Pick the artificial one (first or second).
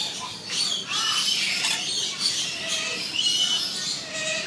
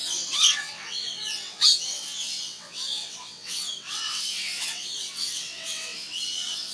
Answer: second